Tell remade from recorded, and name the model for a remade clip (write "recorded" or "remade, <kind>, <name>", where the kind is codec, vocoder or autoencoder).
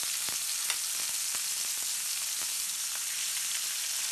recorded